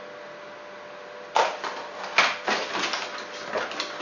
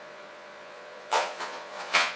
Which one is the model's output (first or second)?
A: second